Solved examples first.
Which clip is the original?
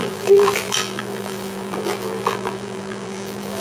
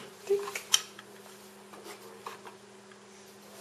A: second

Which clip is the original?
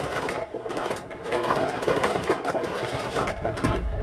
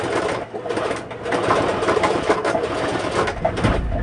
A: second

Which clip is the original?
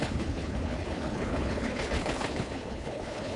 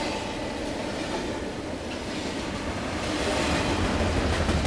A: second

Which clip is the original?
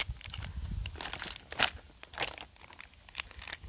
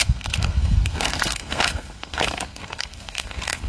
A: first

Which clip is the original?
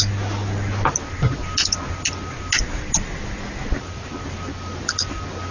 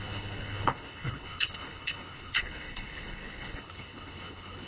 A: first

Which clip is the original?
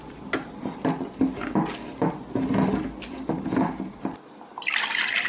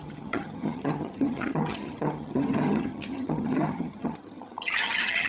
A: first